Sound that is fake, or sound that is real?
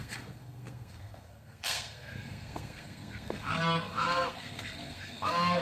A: fake